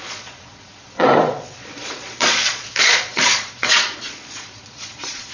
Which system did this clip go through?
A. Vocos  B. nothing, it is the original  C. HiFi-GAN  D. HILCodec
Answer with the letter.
A